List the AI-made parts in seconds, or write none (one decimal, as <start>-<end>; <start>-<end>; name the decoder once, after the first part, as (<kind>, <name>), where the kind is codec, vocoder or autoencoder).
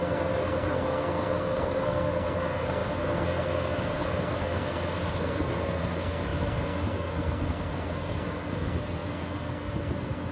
0.0-10.3 (codec, SNAC)